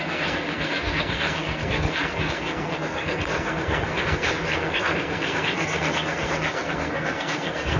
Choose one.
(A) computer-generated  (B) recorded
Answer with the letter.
A